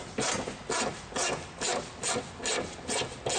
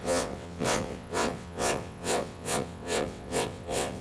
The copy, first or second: second